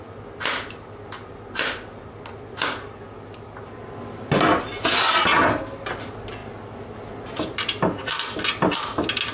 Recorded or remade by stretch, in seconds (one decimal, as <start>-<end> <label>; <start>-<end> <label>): 0.0-9.3 recorded